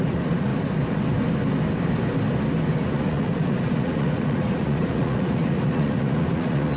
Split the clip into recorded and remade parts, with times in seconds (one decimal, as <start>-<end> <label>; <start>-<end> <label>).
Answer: 0.0-0.5 remade; 0.5-2.9 recorded; 2.9-6.8 remade